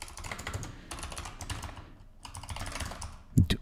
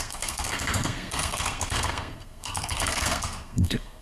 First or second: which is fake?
second